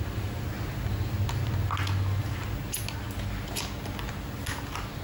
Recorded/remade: recorded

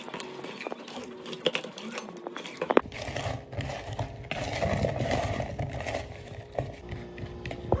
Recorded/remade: recorded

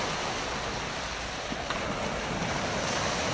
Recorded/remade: recorded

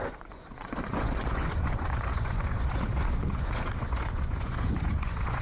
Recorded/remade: remade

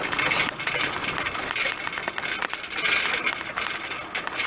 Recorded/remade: recorded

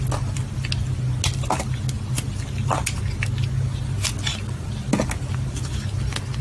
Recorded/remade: recorded